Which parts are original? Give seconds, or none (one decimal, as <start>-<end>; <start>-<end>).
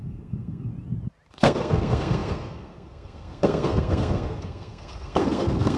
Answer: 0.7-1.3